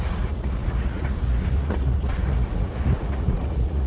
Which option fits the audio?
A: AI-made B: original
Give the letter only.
A